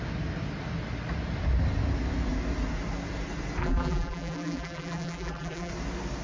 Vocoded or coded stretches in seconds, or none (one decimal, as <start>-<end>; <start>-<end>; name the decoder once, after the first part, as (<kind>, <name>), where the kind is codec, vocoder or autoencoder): 3.6-5.7 (vocoder, BigVGAN v2)